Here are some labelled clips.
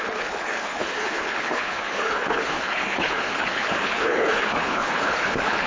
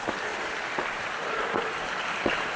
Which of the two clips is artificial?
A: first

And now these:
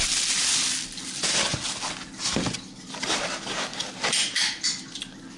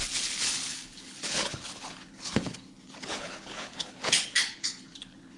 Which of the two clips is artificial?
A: second